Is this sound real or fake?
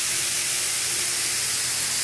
real